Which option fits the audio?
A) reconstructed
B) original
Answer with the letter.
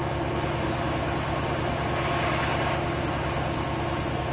B